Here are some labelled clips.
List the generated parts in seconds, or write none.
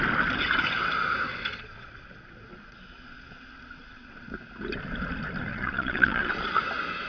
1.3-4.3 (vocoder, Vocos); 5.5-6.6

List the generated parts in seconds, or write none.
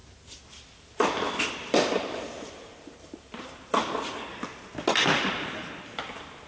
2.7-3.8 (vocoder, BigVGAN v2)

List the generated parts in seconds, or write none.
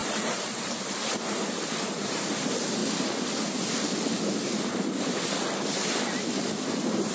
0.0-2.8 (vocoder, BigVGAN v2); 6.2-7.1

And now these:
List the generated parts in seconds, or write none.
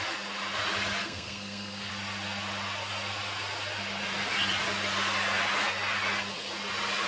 1.0-1.9 (codec, SNAC)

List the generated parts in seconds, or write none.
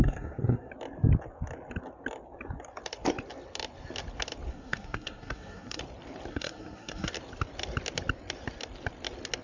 0.0-0.7 (codec, SNAC); 4.5-5.8; 6.3-7.1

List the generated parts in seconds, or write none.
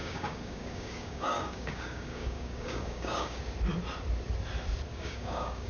0.0-3.4 (codec, DAC); 4.9-5.7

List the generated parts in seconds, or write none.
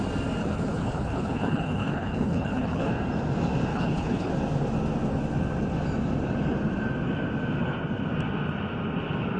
0.4-2.9 (codec, HILCodec); 3.7-4.3